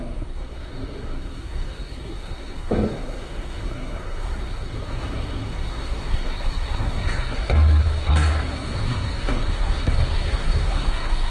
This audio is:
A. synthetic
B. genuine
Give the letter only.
A